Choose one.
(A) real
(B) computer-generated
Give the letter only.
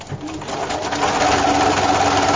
A